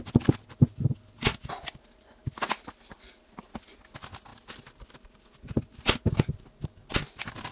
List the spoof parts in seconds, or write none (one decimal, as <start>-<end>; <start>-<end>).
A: none